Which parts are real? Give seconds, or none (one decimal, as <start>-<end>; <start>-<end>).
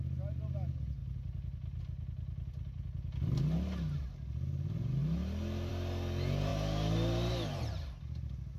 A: 0.0-8.6